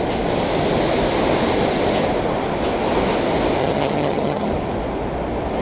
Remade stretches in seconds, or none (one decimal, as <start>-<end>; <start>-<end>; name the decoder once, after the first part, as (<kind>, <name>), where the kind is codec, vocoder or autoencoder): 3.6-4.5 (vocoder, HiFi-GAN)